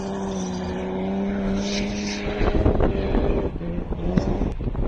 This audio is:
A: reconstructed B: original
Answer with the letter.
B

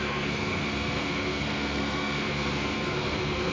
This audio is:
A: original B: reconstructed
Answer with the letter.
B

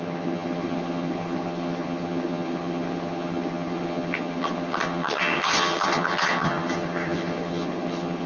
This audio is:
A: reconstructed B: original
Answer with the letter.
A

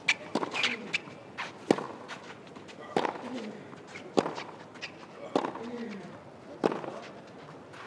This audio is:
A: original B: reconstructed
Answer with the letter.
A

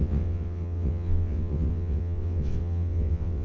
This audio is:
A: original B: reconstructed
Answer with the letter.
B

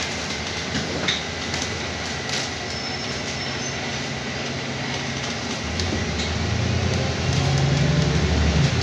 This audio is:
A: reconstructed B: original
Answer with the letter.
B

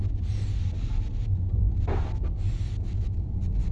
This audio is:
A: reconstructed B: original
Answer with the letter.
B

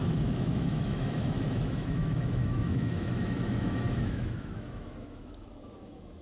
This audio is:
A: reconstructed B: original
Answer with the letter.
A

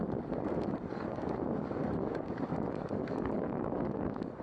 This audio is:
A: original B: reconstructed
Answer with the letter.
B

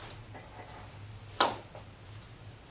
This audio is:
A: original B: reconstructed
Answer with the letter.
A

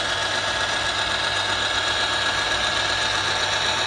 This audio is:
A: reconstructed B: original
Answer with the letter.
B